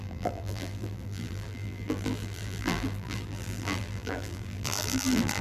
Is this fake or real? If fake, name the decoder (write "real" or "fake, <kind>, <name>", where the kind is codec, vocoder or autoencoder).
fake, vocoder, BigVGAN v2